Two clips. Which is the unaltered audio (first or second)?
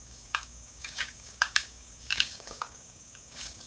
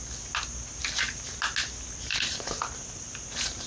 second